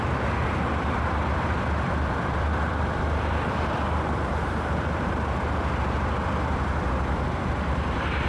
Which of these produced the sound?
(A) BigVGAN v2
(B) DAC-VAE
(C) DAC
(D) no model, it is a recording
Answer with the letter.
A